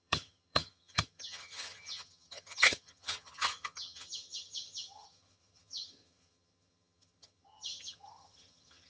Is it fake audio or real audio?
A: fake